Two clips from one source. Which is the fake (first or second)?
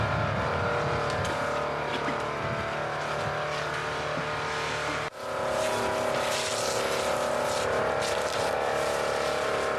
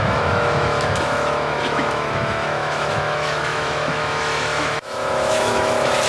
second